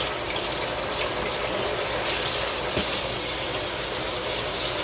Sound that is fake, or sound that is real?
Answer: real